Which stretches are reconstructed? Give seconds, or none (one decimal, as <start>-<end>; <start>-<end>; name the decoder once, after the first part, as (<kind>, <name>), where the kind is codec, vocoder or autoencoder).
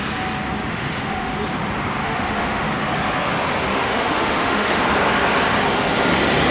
0.7-1.3 (autoencoder, DAC-VAE); 2.0-2.7; 3.7-4.8